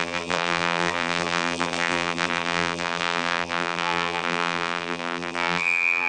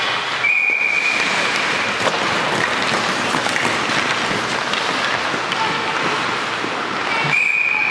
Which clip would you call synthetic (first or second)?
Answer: first